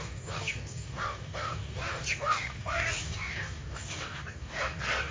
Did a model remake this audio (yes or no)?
yes